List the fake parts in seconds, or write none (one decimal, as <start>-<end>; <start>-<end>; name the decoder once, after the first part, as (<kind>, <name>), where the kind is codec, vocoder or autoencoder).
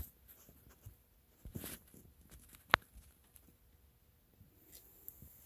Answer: none